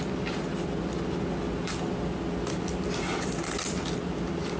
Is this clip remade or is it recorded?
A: recorded